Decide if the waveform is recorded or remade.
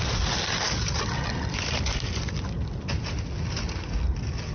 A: recorded